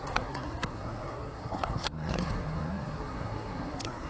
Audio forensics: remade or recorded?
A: remade